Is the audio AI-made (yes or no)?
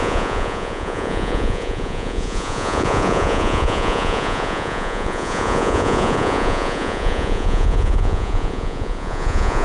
yes